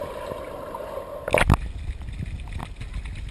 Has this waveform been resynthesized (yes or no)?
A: no